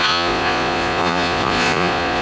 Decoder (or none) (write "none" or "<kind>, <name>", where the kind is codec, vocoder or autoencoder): vocoder, Vocos